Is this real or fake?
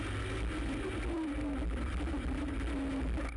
real